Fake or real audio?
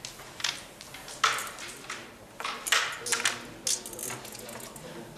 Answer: real